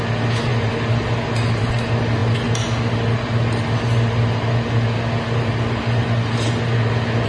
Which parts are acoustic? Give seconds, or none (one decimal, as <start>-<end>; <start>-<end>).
0.0-7.3